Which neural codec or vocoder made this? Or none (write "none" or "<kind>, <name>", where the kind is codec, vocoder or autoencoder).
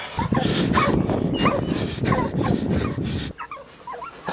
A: none